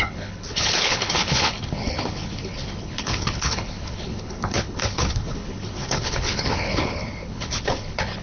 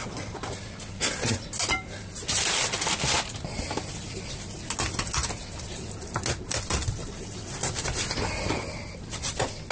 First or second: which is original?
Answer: second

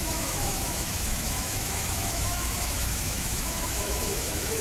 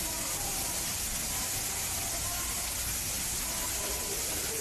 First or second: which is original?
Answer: second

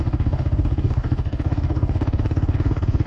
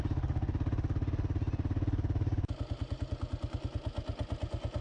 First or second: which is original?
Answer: second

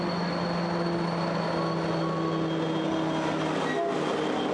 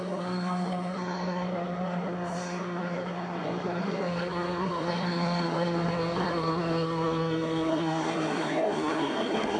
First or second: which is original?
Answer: first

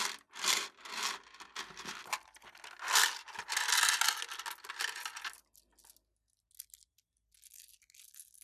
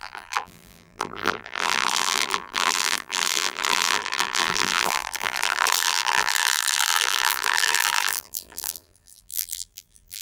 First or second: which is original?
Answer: first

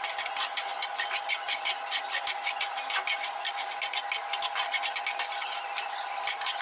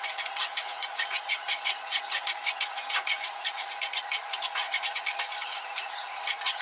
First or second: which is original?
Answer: first